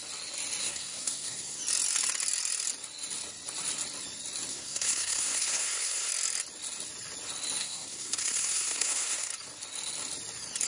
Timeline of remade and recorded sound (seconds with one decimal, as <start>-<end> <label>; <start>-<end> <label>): 0.0-0.6 recorded; 0.6-1.6 remade; 1.6-4.5 recorded; 4.5-6.1 remade; 6.1-7.6 recorded; 7.6-9.3 remade; 9.3-10.7 recorded